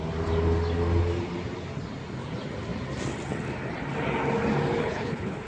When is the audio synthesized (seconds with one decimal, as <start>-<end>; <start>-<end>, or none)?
4.8-5.5